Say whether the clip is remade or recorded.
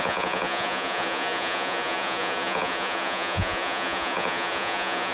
remade